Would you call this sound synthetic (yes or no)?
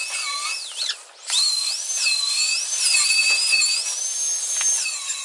no